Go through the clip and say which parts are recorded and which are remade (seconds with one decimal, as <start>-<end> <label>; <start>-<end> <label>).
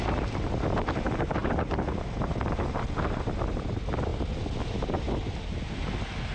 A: 0.0-6.3 recorded